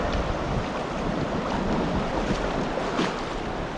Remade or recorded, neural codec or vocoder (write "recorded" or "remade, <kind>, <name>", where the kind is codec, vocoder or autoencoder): recorded